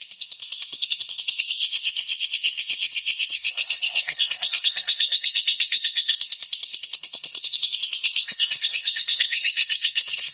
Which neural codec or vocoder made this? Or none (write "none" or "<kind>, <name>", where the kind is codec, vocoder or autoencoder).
codec, SNAC